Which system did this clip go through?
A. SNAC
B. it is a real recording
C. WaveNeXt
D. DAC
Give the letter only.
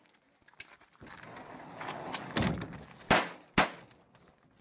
B